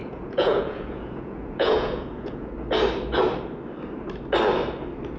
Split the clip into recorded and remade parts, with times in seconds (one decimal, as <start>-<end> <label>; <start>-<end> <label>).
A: 0.0-2.5 remade; 2.5-5.2 recorded